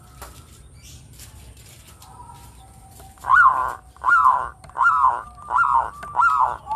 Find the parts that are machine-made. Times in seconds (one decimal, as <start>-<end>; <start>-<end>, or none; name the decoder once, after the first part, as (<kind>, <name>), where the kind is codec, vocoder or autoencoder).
3.6-6.8 (vocoder, BigVGAN v2)

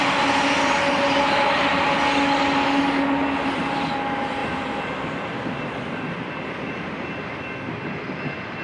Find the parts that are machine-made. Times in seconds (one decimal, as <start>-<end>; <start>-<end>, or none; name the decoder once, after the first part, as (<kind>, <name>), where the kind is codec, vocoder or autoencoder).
4.4-6.4 (vocoder, BigVGAN v2)

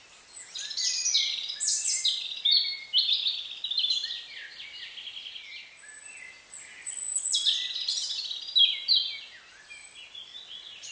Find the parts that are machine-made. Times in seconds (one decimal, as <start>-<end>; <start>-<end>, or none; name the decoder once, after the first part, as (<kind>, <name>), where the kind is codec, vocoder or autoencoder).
1.0-1.8 (vocoder, BigVGAN v2)

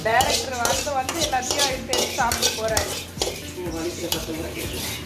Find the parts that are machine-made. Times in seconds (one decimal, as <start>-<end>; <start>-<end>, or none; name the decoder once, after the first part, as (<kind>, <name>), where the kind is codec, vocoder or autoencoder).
3.9-4.4 (vocoder, BigVGAN v2)

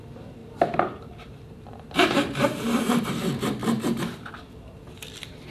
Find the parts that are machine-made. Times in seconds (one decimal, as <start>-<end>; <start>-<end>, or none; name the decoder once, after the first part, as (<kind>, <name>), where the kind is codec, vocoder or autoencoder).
0.4-3.1 (vocoder, BigVGAN v2); 3.6-4.3